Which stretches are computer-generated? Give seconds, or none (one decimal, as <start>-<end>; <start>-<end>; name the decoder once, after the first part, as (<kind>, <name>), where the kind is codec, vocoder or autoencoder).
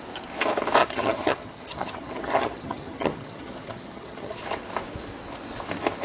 0.8-4.4 (vocoder, HiFi-GAN)